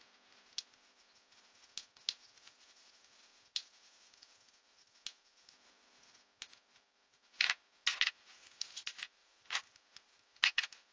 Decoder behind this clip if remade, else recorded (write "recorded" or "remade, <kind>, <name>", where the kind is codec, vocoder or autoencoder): recorded